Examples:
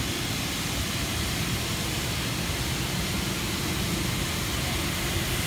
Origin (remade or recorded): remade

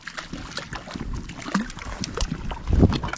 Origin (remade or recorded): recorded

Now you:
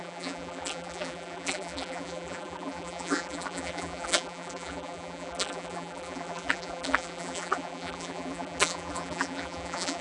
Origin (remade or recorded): remade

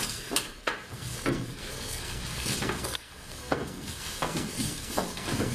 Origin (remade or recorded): remade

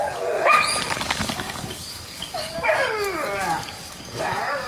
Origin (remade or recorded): remade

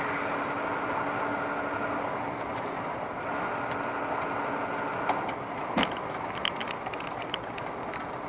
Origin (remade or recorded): recorded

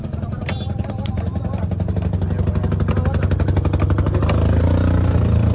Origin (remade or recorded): recorded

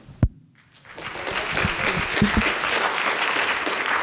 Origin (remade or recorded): recorded